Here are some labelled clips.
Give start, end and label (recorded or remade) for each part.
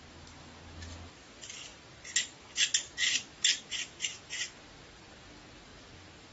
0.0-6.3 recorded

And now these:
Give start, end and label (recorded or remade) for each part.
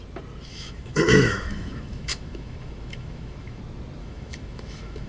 0.0-0.5 recorded; 0.5-3.6 remade; 3.6-4.0 recorded; 4.0-5.1 remade